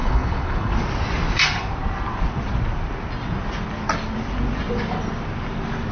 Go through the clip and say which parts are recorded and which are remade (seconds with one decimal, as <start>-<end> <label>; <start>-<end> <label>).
0.0-0.7 remade; 0.7-5.9 recorded